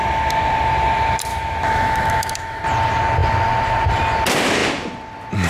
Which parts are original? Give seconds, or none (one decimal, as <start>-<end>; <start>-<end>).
0.0-1.3; 2.6-5.5